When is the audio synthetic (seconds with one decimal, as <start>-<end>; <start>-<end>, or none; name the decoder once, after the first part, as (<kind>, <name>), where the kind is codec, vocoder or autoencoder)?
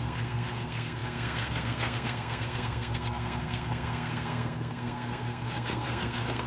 0.0-6.5 (codec, SNAC)